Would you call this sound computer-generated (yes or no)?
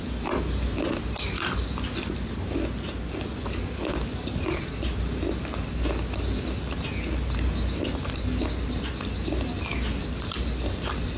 no